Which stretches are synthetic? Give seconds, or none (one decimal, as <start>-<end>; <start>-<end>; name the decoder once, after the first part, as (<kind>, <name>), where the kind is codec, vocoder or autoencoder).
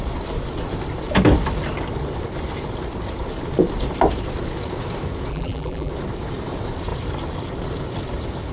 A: 5.3-5.9 (vocoder, BigVGAN v2)